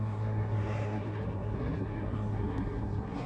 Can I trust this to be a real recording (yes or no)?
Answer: no